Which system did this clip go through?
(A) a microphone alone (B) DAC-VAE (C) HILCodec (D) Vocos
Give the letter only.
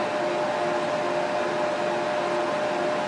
A